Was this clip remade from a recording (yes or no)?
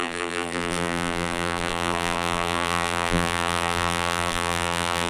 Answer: yes